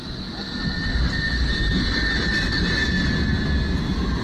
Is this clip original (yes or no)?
yes